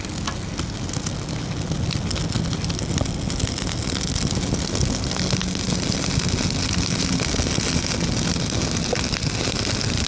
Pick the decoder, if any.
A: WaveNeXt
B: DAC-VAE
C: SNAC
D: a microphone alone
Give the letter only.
D